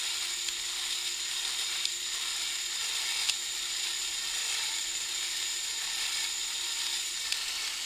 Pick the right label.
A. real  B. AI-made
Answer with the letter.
A